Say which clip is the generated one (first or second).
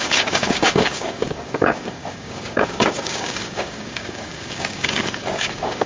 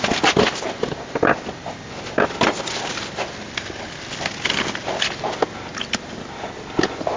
first